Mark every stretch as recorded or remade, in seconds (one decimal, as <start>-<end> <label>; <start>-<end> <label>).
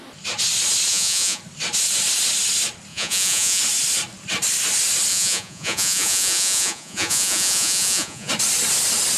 0.0-0.9 recorded; 0.9-1.4 remade; 1.4-2.9 recorded; 2.9-3.6 remade; 3.6-5.1 recorded; 5.1-8.3 remade; 8.3-9.2 recorded